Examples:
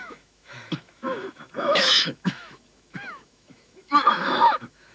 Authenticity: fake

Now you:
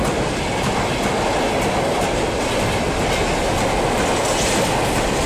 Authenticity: real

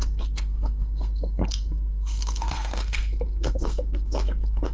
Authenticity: fake